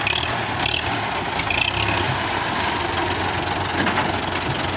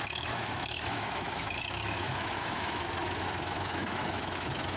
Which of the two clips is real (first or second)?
first